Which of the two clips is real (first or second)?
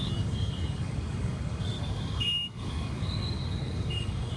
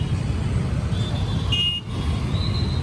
second